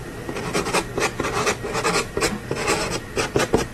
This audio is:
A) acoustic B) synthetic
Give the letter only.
A